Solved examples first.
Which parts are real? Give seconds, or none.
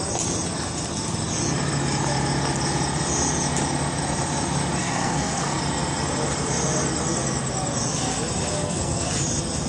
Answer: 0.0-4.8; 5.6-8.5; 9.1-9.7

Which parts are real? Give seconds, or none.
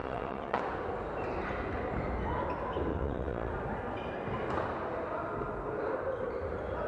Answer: 0.6-2.9; 3.5-6.9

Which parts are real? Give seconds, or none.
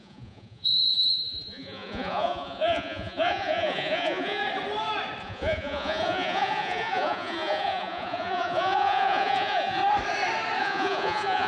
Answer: 4.4-5.2; 9.8-10.6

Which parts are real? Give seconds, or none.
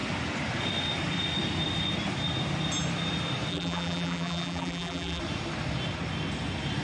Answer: 0.0-3.5; 5.2-6.8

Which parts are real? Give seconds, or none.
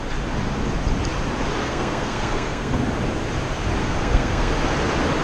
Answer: 0.0-1.6; 2.8-3.8; 4.5-5.2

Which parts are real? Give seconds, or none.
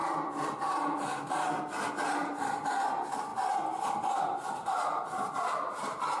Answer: 0.0-6.2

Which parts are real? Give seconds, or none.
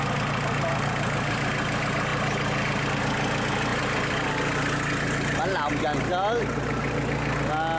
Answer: 0.0-7.8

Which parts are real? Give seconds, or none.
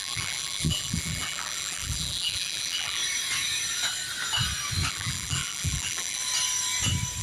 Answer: 3.0-4.9; 6.2-7.2